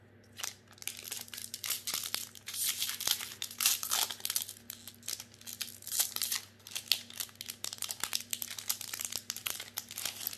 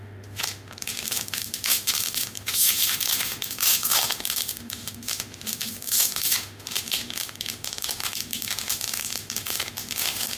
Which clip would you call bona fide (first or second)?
first